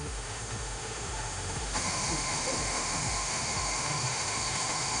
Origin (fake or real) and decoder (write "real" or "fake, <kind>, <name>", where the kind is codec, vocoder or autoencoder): fake, autoencoder, DAC-VAE